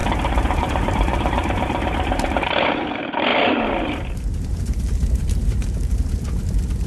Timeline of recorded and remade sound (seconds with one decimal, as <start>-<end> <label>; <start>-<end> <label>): 0.0-2.9 remade; 2.9-3.3 recorded; 3.3-5.9 remade; 5.9-6.9 recorded